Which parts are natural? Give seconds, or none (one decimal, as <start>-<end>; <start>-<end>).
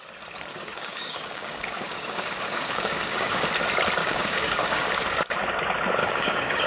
0.0-0.5; 3.5-4.0; 4.9-6.0